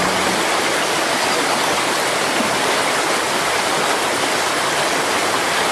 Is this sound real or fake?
real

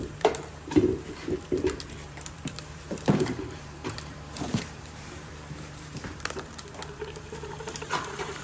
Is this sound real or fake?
fake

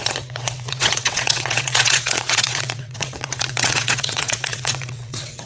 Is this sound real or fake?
fake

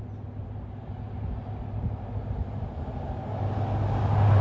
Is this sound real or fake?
real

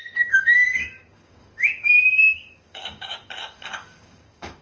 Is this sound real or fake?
fake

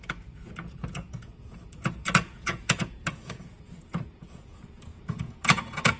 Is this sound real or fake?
fake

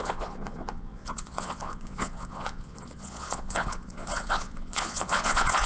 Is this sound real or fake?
fake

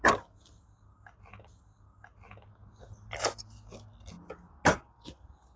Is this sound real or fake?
real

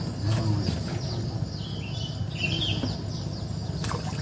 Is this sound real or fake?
real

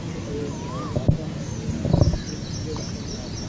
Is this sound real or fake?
real